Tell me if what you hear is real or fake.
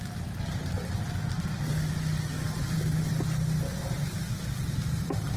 real